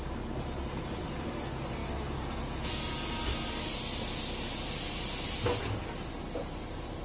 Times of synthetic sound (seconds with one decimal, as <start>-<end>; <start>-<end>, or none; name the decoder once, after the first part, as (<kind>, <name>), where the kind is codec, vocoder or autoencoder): none